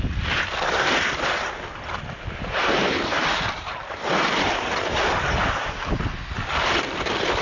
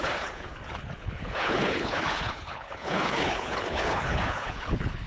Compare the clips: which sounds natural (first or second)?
first